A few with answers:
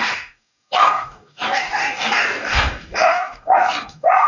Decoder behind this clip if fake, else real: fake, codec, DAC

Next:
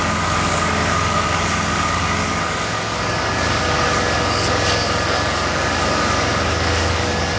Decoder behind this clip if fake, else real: fake, codec, DAC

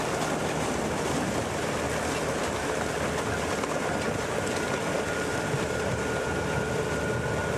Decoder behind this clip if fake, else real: real